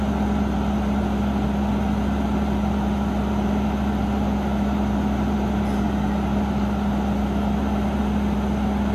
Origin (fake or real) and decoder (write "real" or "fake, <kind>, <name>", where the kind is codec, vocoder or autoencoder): real